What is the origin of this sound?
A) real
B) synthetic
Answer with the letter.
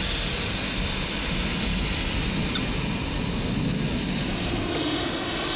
A